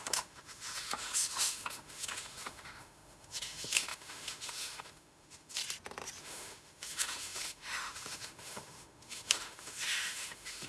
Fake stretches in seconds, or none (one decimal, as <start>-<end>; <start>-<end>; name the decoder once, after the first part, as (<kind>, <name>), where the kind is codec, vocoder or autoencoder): 0.0-5.6 (autoencoder, DAC-VAE); 6.2-10.7